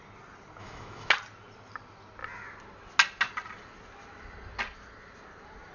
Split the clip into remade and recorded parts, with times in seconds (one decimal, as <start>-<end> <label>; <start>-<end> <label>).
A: 0.0-0.6 recorded; 0.6-1.1 remade; 1.1-5.7 recorded